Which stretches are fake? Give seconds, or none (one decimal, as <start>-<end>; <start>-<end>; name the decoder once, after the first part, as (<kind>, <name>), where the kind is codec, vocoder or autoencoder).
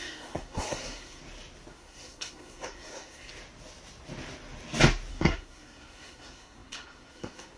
0.0-1.2 (codec, SNAC); 1.7-3.3; 5.1-7.6